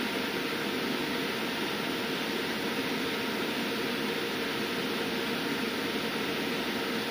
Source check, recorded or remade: recorded